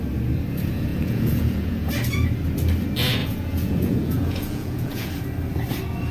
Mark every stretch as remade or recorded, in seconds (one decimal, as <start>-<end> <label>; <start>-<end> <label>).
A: 0.0-0.9 recorded; 0.9-1.9 remade; 1.9-3.2 recorded; 3.2-5.1 remade; 5.1-6.1 recorded